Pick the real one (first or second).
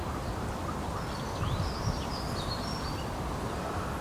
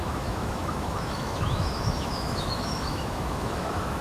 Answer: first